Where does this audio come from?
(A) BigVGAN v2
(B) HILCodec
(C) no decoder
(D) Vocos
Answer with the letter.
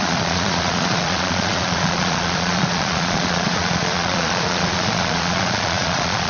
D